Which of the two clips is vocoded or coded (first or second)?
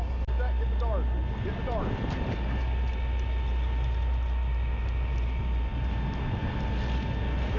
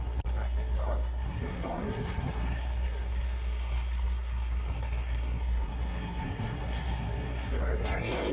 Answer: second